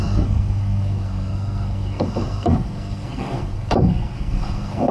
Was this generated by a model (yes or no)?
yes